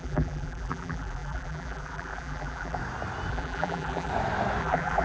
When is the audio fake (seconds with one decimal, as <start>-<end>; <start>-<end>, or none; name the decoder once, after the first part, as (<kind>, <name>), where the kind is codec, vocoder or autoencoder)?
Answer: 0.0-2.8 (vocoder, BigVGAN v2); 3.3-4.1; 4.6-5.0